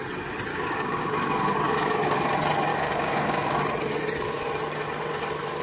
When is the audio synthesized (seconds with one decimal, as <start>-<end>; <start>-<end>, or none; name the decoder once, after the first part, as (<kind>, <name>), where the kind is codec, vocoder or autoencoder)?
0.5-2.2 (codec, DAC); 2.7-3.6